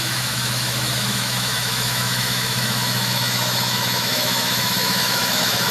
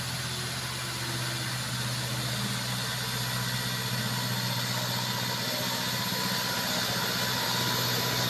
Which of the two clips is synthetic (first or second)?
first